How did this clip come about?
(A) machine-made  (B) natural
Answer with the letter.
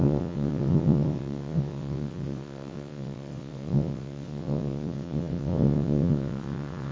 A